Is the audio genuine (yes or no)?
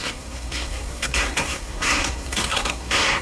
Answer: no